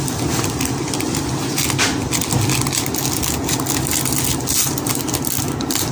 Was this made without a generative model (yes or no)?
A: yes